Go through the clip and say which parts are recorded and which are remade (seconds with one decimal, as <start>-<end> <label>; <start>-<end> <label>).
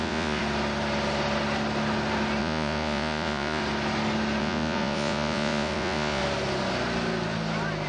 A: 0.0-0.4 remade; 0.4-2.4 recorded; 2.4-3.6 remade; 3.6-4.4 recorded; 4.4-6.2 remade; 6.2-7.9 recorded